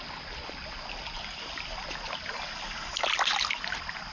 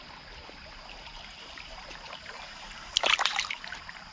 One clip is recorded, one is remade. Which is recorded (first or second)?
first